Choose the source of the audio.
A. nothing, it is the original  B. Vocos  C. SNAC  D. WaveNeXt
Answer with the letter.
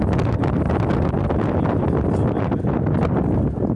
A